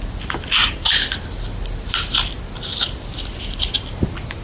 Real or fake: real